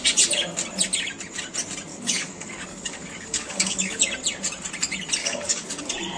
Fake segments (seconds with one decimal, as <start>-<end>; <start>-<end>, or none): 1.9-4.0; 5.2-5.8